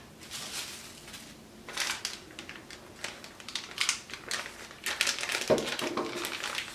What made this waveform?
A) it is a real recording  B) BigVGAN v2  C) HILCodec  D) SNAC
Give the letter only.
A